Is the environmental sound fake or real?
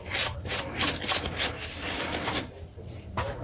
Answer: real